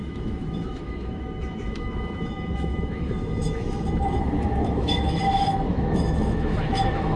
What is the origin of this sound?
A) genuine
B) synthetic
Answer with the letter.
B